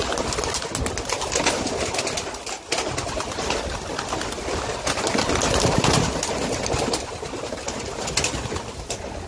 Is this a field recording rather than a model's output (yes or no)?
yes